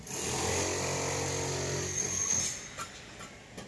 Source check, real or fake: real